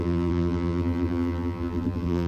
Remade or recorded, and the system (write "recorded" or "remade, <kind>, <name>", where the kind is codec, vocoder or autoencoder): remade, vocoder, BigVGAN v2